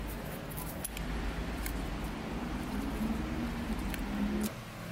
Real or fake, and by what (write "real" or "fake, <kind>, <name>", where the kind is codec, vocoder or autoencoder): real